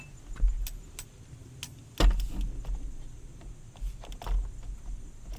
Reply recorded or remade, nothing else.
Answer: recorded